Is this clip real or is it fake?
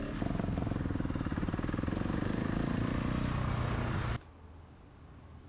real